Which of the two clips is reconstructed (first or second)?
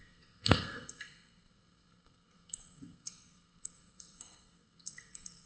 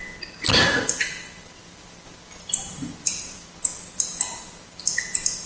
first